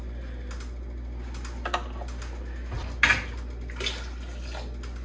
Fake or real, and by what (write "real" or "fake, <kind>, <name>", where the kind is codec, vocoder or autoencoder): real